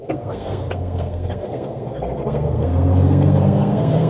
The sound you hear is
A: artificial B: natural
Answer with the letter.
A